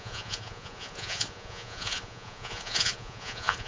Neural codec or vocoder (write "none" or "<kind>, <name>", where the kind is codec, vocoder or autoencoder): vocoder, Vocos